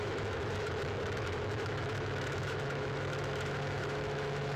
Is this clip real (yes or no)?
no